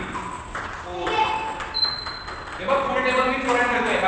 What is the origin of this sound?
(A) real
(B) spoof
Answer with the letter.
A